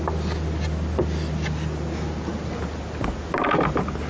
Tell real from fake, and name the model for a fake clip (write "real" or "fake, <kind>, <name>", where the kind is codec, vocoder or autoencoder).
real